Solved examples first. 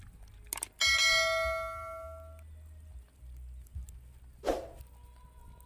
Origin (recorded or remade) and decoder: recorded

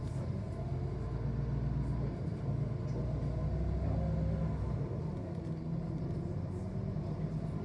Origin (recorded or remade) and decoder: recorded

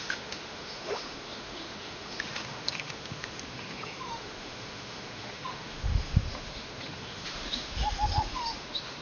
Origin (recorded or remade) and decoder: remade, autoencoder, DAC-VAE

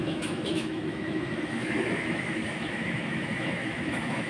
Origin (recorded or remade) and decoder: remade, autoencoder, DAC-VAE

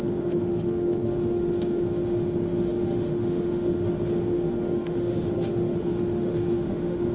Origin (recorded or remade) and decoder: remade, autoencoder, DAC-VAE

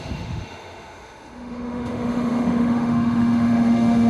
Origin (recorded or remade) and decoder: remade, autoencoder, DAC-VAE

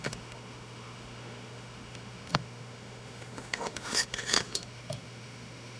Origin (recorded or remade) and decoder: remade, autoencoder, DAC-VAE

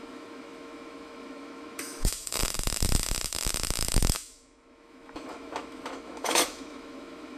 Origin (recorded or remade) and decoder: remade, autoencoder, DAC-VAE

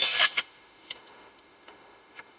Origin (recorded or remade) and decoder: remade, autoencoder, DAC-VAE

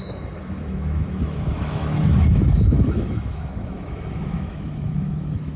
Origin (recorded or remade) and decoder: remade, autoencoder, DAC-VAE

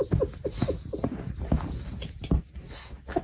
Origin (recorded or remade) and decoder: recorded